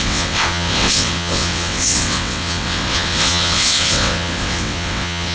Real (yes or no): no